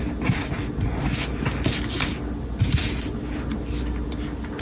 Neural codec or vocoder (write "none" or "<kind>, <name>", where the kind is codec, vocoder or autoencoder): none